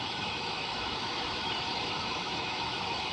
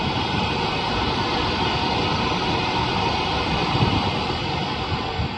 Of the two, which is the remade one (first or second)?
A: first